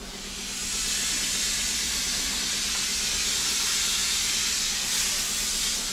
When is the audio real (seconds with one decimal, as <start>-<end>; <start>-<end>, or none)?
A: 0.0-5.9